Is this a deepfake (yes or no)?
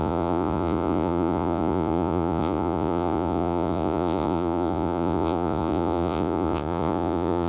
yes